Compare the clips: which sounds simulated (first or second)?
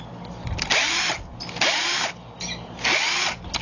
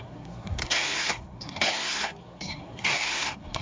second